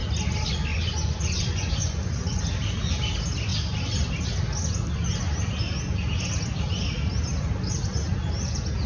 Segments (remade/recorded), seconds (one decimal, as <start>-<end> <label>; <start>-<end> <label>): 0.0-0.7 recorded; 0.7-2.4 remade; 2.4-8.9 recorded